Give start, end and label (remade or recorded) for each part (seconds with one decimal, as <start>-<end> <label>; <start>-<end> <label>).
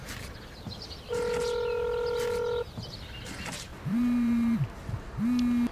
0.0-3.7 recorded; 3.7-5.2 remade; 5.2-5.7 recorded